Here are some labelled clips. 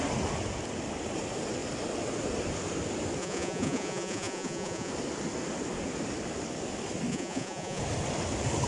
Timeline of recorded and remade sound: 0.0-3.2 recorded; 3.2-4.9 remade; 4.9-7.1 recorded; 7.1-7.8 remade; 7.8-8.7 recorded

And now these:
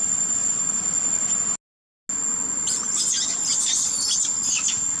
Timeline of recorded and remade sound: 0.0-5.0 recorded

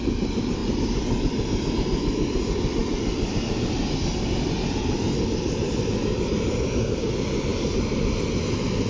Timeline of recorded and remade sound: 0.0-8.9 recorded